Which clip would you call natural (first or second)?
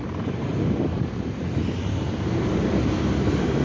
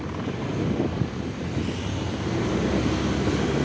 second